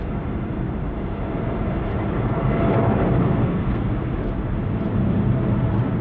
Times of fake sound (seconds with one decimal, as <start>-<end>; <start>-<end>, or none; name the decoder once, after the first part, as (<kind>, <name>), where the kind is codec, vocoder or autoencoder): 3.4-3.9 (codec, SNAC)